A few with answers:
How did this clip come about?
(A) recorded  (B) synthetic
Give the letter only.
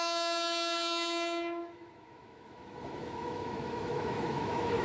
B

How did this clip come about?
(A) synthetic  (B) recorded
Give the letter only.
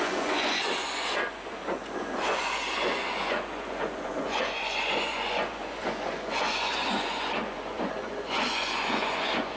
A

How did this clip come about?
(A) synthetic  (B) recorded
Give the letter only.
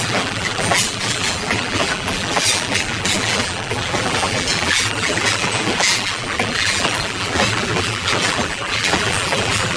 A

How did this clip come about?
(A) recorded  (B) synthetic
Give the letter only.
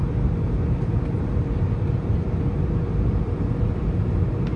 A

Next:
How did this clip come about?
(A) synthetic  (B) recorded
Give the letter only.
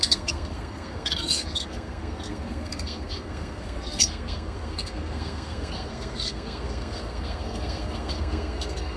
A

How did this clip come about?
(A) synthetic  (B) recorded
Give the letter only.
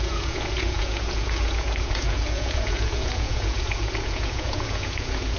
A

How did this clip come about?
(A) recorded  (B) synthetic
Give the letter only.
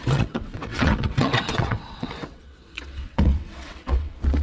B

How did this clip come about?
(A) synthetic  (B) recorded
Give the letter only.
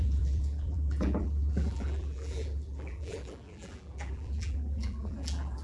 A